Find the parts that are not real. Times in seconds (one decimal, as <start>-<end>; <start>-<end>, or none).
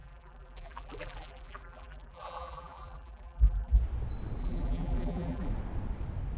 0.0-3.8; 4.4-5.5